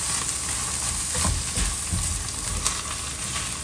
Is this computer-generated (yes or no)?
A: no